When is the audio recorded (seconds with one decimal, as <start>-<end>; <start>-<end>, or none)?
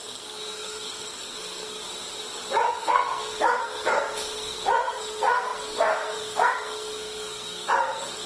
1.8-2.7